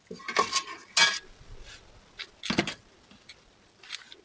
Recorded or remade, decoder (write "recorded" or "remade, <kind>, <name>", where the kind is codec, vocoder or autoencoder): recorded